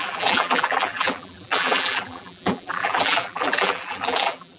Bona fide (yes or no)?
no